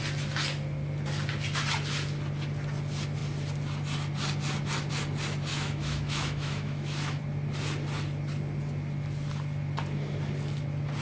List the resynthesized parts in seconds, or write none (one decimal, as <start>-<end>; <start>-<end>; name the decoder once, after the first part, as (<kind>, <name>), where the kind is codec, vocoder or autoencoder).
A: 5.5-7.2 (autoencoder, DAC-VAE)